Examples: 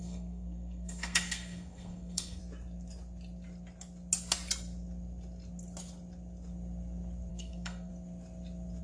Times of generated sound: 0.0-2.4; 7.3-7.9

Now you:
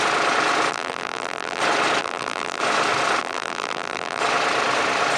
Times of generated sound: 0.7-1.6; 2.0-2.6; 3.2-4.2

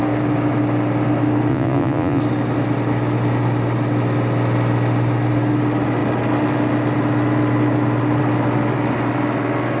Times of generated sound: 1.5-2.2

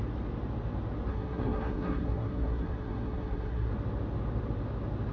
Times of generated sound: 1.1-3.7

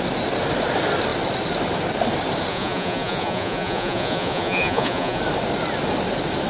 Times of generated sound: 2.5-5.2